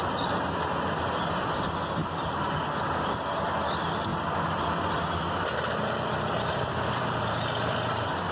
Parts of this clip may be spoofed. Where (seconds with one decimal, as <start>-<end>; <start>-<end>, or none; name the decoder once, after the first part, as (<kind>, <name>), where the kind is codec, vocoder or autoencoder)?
0.0-8.3 (vocoder, BigVGAN v2)